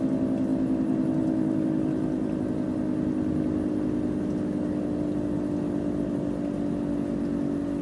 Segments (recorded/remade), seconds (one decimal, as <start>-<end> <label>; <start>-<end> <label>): 0.0-7.8 recorded